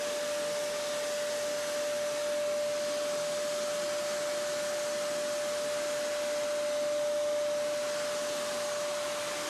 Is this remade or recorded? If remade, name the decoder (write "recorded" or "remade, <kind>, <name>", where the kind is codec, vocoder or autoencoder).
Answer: recorded